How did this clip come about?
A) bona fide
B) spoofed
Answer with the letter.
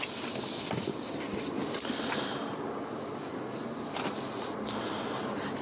A